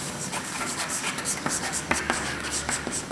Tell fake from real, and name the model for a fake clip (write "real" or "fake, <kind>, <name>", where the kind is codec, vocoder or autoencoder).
fake, codec, DAC